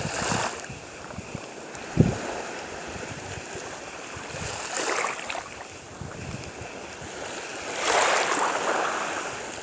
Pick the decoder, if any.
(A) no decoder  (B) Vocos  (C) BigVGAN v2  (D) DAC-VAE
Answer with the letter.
A